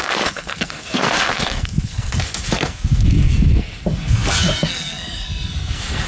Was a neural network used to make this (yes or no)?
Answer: yes